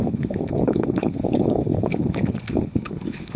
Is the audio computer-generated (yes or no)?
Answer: yes